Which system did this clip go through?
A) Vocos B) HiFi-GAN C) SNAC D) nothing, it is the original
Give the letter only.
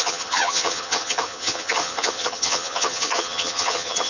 B